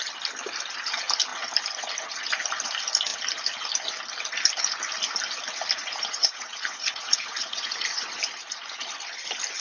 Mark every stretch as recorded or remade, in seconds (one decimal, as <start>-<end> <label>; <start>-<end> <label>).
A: 0.0-5.9 recorded; 5.9-8.2 remade; 8.2-9.6 recorded